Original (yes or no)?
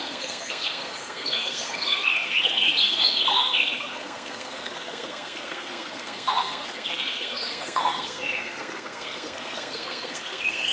no